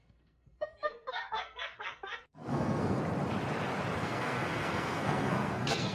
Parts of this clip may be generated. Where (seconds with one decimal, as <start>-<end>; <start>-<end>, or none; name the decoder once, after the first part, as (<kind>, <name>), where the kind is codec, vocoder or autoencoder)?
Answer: 0.0-3.0 (codec, SNAC); 4.0-5.9